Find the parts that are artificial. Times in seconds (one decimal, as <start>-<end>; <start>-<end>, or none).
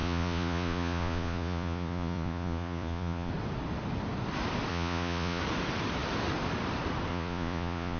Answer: 0.0-3.3; 4.7-5.4; 7.1-8.0